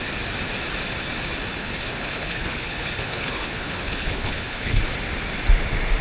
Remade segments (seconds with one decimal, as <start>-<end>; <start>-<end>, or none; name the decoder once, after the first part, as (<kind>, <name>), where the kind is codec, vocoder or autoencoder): 1.5-4.8 (codec, HILCodec)